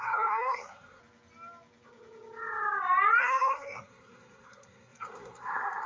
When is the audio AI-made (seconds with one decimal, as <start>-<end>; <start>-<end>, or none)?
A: 0.0-1.0; 3.2-5.9